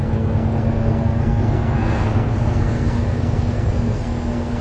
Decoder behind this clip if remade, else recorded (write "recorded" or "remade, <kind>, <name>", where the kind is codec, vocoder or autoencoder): remade, codec, SNAC